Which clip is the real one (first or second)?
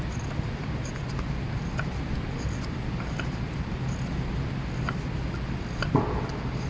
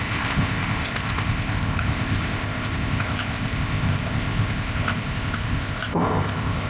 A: first